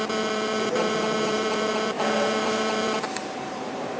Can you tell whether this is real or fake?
fake